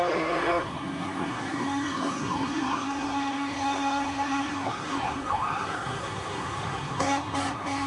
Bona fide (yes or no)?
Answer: no